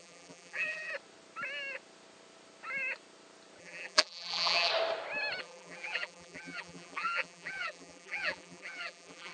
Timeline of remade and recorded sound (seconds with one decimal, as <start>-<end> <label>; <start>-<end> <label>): 0.0-0.9 remade; 0.9-3.6 recorded; 3.6-4.7 remade; 4.7-5.4 recorded; 5.4-9.3 remade